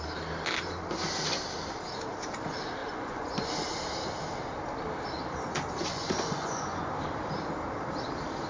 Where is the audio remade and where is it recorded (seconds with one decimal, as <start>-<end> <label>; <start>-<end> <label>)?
0.0-2.8 recorded; 2.8-3.5 remade; 3.5-5.9 recorded; 5.9-6.9 remade; 6.9-8.5 recorded